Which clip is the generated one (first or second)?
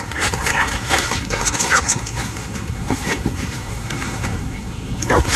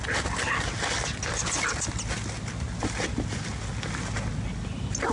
first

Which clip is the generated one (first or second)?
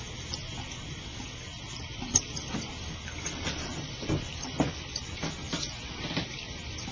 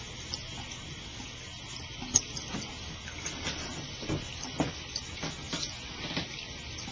first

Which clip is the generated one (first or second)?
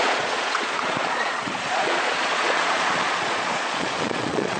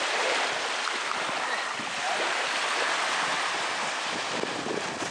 first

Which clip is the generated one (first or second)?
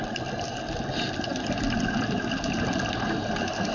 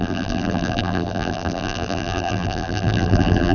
second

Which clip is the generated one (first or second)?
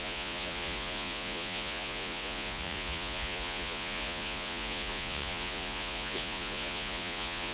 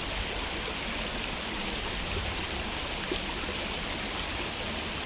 first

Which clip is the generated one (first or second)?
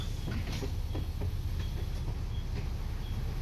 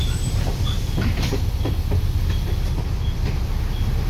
second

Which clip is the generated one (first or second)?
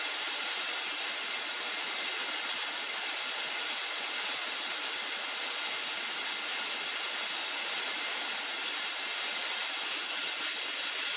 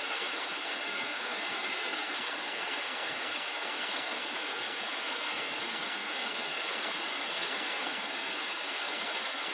second